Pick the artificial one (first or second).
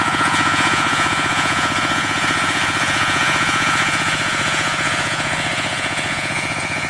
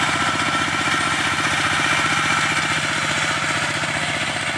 first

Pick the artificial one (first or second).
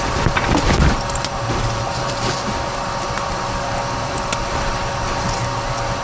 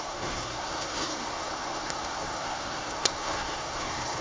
second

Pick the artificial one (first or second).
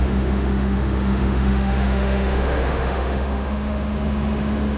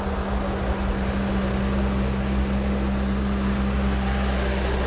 first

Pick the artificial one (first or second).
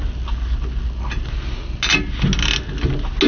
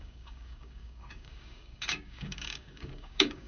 second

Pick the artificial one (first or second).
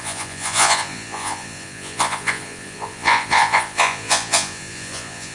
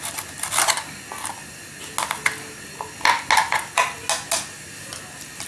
first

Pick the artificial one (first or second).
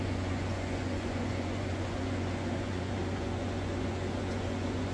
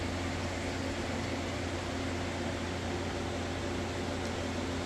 first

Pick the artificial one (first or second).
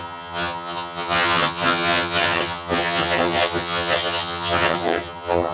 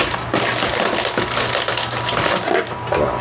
first